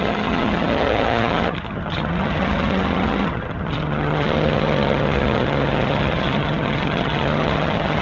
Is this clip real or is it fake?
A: fake